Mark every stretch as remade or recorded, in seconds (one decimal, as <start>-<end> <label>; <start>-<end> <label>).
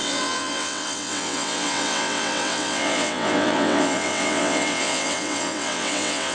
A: 0.0-6.3 remade